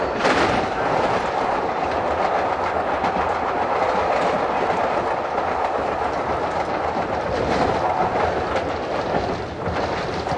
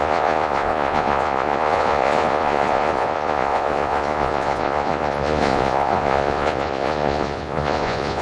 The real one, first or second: first